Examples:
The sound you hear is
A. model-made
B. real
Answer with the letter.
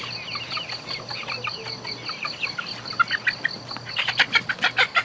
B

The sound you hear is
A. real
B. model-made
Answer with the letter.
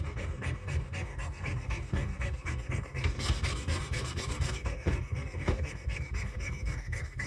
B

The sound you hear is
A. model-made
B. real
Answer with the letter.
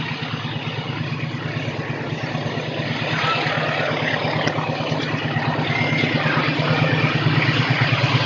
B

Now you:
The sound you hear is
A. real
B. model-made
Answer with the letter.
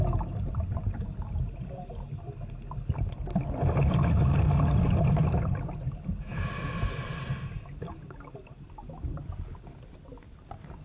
A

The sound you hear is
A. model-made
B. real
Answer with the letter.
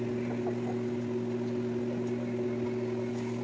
B